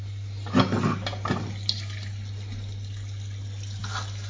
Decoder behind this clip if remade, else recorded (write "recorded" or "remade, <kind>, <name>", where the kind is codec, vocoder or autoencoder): recorded